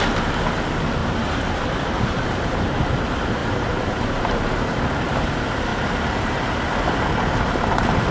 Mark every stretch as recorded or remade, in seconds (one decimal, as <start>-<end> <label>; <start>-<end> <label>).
0.0-1.0 recorded; 1.0-2.7 remade; 2.7-3.4 recorded; 3.4-4.8 remade; 4.8-5.7 recorded; 5.7-6.7 remade; 6.7-8.1 recorded